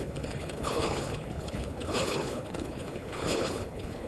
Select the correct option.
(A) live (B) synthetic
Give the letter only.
B